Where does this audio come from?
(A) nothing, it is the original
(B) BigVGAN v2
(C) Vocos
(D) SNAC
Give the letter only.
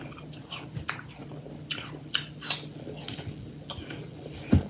A